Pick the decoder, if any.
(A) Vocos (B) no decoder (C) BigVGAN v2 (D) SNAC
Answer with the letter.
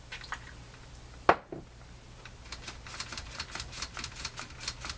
B